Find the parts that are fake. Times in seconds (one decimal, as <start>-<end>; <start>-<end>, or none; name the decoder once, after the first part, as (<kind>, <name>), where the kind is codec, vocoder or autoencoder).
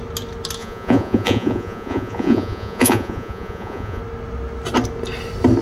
0.6-4.0 (vocoder, Vocos)